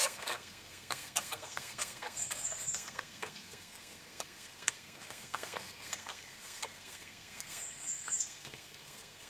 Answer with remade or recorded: remade